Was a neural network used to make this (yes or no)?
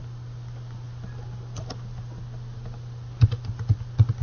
no